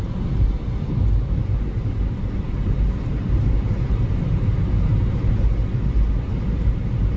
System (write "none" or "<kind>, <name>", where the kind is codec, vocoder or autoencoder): none